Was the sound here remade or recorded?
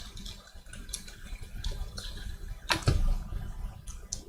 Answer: recorded